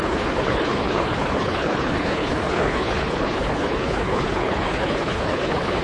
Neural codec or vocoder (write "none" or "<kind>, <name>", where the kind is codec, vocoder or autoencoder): codec, HILCodec